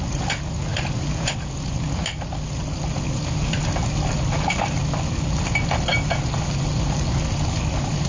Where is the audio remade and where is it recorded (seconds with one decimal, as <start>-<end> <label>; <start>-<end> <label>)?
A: 0.0-8.1 recorded